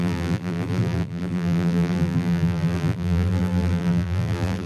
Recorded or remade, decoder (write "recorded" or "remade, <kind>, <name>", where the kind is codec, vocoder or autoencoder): remade, vocoder, BigVGAN v2